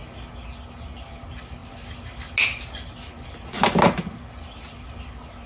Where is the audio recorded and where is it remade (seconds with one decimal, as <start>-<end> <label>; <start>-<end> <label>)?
0.0-5.5 recorded